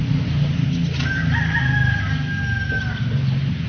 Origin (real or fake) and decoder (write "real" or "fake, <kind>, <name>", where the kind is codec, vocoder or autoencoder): real